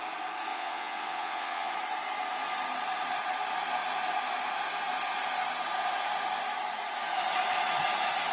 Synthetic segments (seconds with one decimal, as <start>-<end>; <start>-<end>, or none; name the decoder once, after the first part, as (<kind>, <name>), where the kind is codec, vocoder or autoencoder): 0.5-1.7 (vocoder, WaveNeXt)